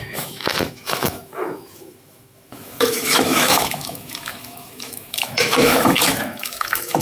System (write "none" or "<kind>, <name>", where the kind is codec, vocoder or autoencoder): autoencoder, DAC-VAE